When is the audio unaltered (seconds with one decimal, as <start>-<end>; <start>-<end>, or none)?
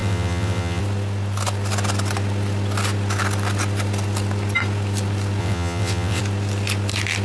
0.8-5.4; 6.2-7.2